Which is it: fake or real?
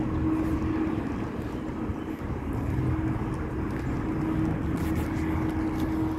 real